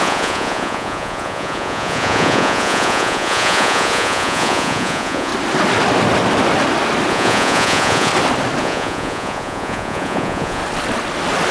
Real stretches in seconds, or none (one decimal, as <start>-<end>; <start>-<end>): 5.3-7.1; 8.1-8.6; 10.6-11.5